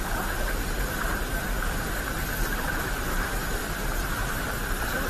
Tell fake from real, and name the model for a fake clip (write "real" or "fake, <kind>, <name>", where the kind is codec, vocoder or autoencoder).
real